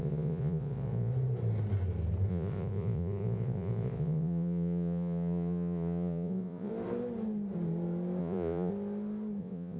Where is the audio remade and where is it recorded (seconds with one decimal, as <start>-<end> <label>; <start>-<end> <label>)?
0.0-1.1 remade; 1.1-2.3 recorded; 2.3-6.7 remade; 6.7-8.2 recorded; 8.2-8.7 remade; 8.7-9.4 recorded; 9.4-9.8 remade